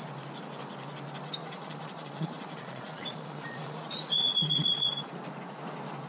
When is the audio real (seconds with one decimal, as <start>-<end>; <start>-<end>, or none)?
0.0-1.4; 5.1-6.1